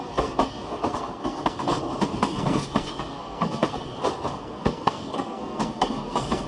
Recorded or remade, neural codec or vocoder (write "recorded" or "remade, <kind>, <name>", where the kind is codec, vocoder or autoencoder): remade, codec, SNAC